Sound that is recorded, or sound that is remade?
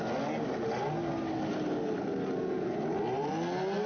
recorded